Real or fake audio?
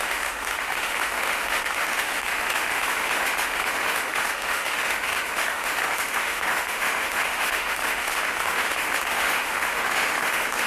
fake